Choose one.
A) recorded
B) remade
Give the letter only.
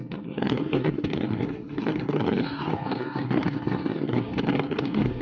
B